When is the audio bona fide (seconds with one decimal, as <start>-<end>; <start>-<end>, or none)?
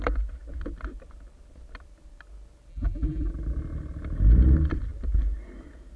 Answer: 0.0-2.7; 3.3-6.0